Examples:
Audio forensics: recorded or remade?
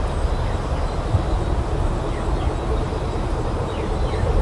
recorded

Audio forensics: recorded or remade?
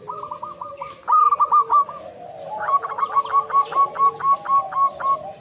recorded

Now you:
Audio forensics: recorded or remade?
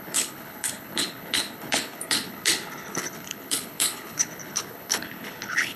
remade